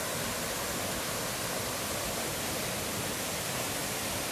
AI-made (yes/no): yes